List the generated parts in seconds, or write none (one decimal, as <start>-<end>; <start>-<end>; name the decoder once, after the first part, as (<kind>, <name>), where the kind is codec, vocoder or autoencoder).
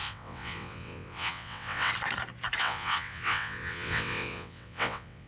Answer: 0.0-1.9 (vocoder, WaveNeXt); 2.6-5.3